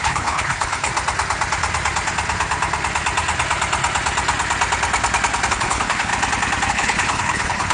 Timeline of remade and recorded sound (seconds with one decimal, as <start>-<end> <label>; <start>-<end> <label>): 0.0-0.9 remade; 0.9-5.5 recorded; 5.5-6.1 remade; 6.1-6.7 recorded; 6.7-7.7 remade